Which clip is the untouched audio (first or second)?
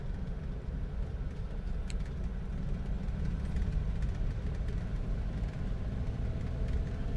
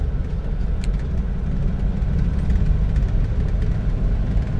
second